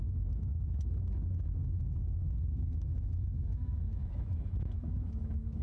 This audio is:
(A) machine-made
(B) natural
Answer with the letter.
A